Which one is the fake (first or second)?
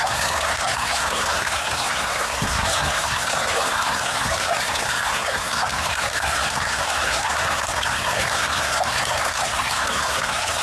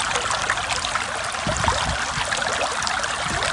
first